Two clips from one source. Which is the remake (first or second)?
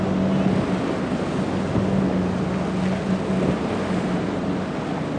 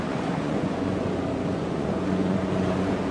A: second